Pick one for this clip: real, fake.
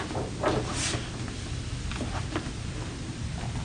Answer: real